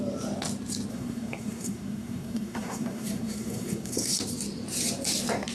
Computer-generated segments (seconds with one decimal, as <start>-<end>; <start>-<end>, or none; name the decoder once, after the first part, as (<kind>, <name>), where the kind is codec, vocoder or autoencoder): 0.9-4.2 (codec, SNAC)